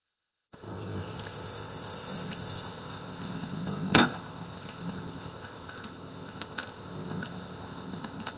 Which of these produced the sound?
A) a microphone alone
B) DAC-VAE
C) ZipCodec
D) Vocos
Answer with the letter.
C